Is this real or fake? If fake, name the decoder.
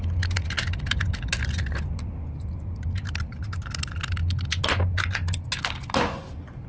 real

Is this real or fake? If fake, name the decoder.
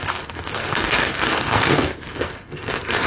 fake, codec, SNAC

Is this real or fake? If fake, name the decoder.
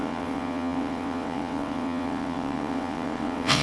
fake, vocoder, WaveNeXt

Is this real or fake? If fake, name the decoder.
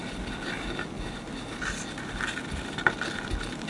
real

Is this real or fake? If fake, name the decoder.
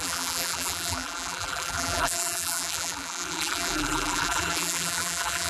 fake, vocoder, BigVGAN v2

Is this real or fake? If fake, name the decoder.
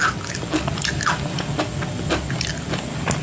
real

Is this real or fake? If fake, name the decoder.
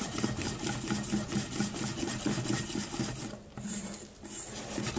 real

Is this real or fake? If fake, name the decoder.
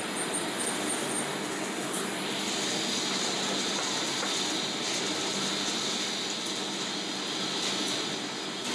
real